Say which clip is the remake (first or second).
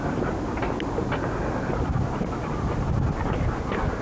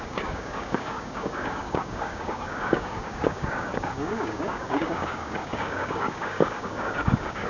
second